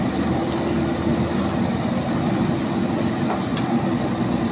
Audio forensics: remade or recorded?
recorded